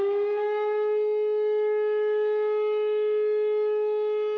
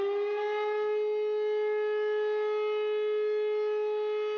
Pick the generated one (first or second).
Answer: first